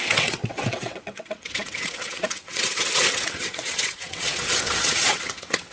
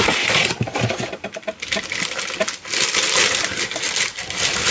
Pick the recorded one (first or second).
second